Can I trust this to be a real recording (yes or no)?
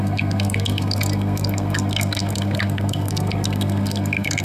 no